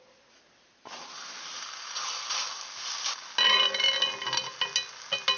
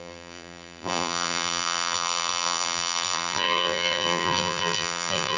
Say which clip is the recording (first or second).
first